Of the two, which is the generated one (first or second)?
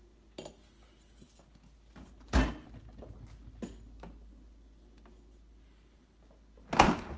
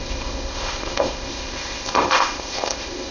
second